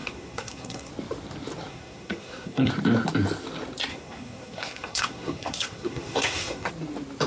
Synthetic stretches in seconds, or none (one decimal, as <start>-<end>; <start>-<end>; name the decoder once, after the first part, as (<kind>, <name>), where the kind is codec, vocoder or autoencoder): 0.0-0.9 (codec, SNAC); 1.7-2.7; 3.9-6.7